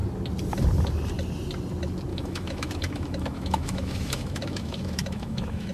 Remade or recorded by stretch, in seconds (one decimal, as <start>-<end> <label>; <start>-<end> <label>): 0.0-2.1 recorded; 2.1-5.7 remade